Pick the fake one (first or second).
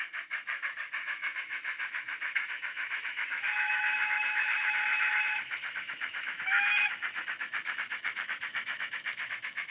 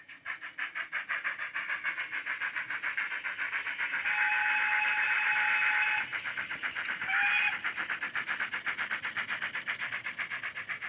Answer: first